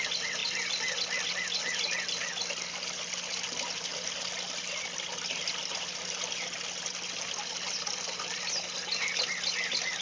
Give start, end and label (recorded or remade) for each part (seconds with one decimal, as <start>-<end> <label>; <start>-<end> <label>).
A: 0.0-10.0 recorded